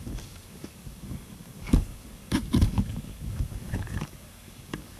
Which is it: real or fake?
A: fake